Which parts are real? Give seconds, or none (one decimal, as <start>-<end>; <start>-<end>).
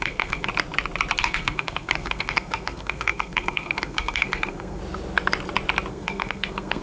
0.5-1.2; 4.8-5.9